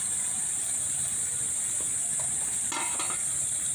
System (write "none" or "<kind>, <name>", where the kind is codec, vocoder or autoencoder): none